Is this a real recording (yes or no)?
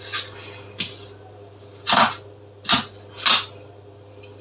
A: yes